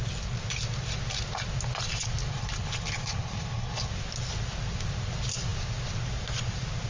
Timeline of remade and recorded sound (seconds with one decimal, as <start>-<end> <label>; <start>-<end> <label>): 0.0-2.3 recorded; 2.3-3.9 remade; 3.9-6.9 recorded